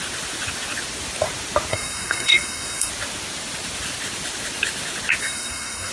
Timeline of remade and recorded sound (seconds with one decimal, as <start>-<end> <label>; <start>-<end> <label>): 0.0-1.7 recorded; 1.7-2.9 remade; 2.9-5.2 recorded; 5.2-5.9 remade